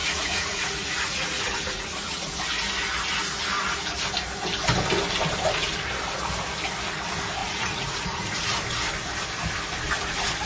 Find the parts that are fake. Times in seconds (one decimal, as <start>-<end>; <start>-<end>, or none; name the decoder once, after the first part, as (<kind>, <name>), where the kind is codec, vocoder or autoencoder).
0.0-2.3 (vocoder, Vocos); 7.4-8.5

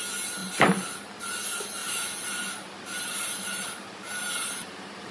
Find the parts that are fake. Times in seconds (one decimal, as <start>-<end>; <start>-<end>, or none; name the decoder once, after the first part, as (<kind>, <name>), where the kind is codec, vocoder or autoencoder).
0.4-1.2 (vocoder, BigVGAN v2); 1.8-5.1

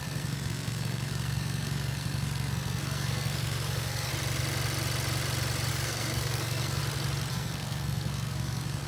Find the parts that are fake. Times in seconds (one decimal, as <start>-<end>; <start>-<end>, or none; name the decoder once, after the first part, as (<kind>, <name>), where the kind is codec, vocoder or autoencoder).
0.0-4.1 (codec, SNAC); 5.7-6.8; 7.3-8.9